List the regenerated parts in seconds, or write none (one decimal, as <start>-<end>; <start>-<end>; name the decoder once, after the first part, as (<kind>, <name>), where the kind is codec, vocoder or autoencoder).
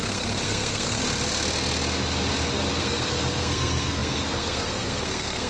0.0-1.0 (codec, SNAC); 2.8-5.5